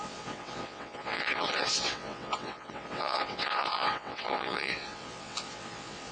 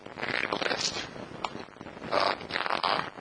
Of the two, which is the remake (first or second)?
first